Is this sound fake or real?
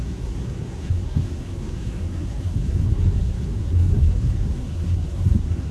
fake